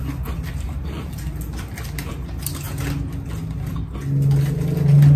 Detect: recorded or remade recorded